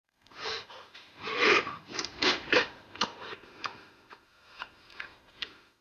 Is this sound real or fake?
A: fake